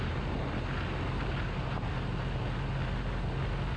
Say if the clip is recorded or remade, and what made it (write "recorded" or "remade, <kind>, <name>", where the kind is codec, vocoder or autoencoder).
recorded